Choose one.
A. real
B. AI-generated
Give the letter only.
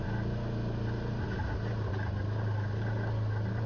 A